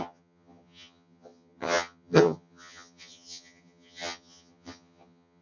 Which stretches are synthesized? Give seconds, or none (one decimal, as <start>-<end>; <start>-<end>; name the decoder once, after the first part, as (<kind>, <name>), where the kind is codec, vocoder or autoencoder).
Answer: 0.0-5.4 (vocoder, HiFi-GAN)